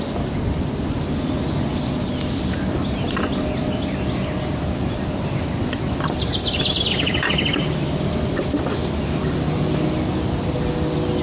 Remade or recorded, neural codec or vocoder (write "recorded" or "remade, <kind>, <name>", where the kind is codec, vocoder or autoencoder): recorded